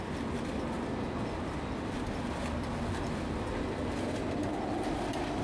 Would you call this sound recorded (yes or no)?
yes